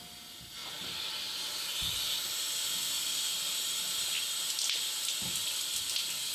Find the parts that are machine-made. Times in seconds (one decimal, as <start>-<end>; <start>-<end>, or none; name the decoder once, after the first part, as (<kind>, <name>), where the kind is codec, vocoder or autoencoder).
none